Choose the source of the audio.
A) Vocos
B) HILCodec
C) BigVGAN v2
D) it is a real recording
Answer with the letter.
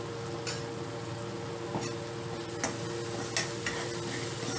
D